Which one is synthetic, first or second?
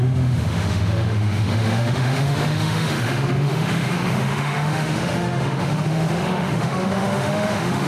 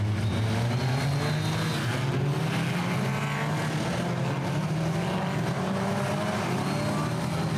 first